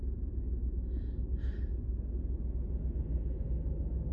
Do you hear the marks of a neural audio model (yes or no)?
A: no